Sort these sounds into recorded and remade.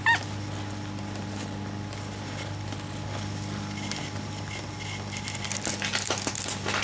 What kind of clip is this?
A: recorded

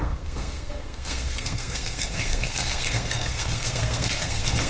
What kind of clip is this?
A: remade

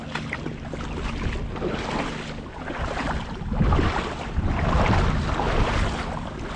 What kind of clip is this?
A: recorded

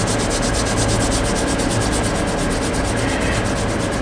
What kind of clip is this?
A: recorded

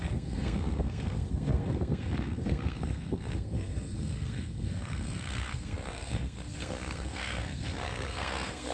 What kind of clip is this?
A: remade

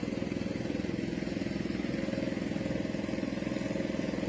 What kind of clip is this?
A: recorded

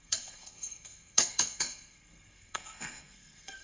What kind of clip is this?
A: remade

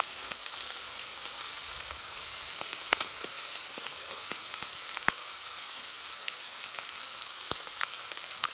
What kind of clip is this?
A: remade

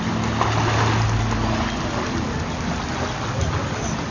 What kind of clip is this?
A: recorded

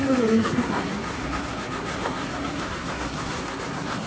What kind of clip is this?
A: remade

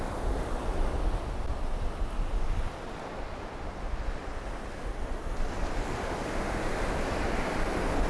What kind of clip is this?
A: recorded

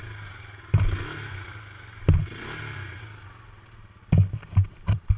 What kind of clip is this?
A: recorded